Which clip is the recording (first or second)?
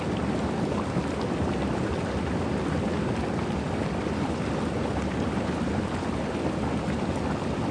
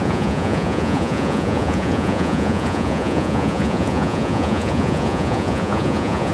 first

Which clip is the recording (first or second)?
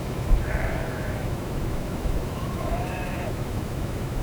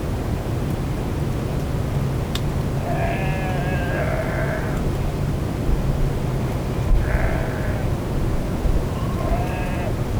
second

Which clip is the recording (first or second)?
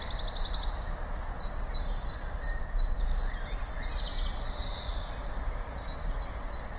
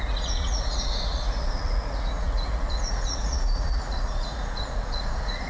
first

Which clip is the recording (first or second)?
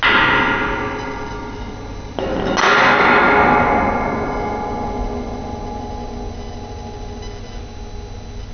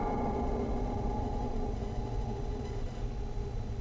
first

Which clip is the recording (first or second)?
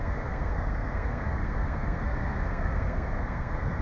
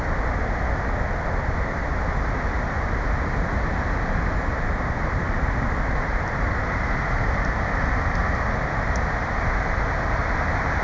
second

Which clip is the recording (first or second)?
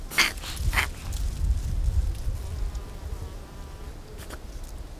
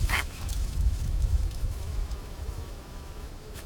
first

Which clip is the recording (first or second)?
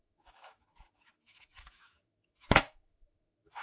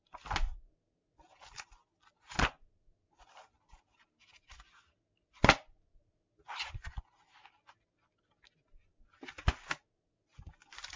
second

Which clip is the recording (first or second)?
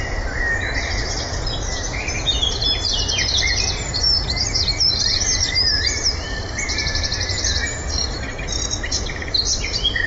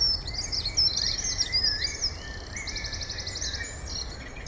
second